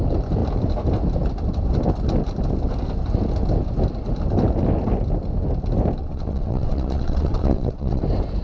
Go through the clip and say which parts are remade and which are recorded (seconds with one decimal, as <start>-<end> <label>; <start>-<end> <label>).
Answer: 0.0-6.0 recorded; 6.0-8.0 remade; 8.0-8.4 recorded